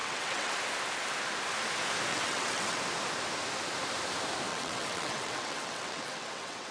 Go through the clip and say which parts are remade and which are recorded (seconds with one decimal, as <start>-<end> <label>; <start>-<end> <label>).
0.0-0.5 remade; 0.5-2.1 recorded; 2.1-2.8 remade; 2.8-4.5 recorded; 4.5-6.7 remade